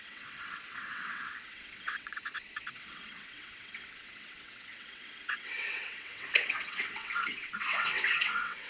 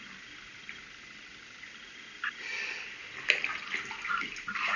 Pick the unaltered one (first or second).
second